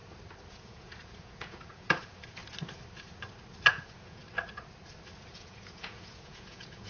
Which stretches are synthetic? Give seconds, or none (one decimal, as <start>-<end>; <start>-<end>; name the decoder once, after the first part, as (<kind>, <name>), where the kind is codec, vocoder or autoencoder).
0.5-2.4 (vocoder, Vocos); 3.7-4.2; 5.3-6.9